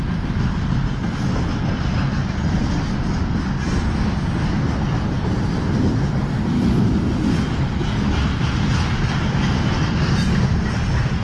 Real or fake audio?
real